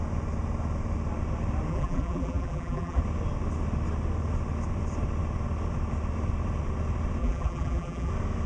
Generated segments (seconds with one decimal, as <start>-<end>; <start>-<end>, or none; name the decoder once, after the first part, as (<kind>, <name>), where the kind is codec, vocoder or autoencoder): 1.7-3.0 (vocoder, BigVGAN v2); 7.2-8.1